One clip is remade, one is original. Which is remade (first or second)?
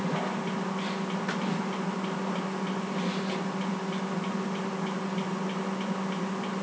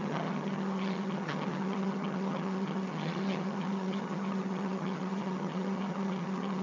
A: second